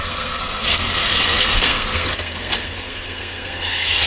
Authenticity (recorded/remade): remade